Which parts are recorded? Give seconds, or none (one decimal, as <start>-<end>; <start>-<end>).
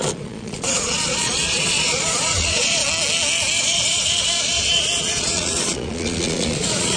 2.8-3.6